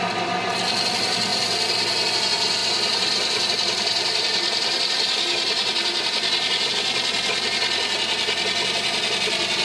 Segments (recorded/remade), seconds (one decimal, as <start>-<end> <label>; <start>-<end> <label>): 0.0-2.6 recorded; 2.6-6.7 remade; 6.7-9.6 recorded